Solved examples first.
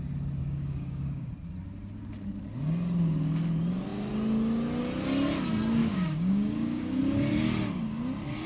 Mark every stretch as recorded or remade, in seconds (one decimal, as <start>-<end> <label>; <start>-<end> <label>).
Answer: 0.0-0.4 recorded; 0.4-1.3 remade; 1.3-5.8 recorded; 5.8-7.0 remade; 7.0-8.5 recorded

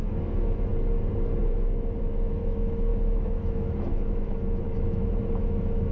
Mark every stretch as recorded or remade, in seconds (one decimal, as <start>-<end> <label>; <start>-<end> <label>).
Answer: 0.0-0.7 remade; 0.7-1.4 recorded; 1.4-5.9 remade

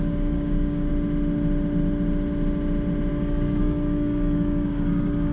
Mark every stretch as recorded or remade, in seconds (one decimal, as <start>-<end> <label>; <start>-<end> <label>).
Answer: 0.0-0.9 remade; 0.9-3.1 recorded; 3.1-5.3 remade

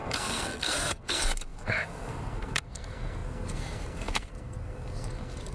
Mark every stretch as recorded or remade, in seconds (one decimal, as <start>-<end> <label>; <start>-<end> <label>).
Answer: 0.0-5.5 remade

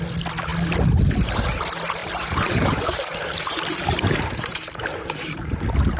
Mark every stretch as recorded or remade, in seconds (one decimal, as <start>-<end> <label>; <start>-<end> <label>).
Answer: 0.0-2.0 recorded; 2.0-5.6 remade; 5.6-6.0 recorded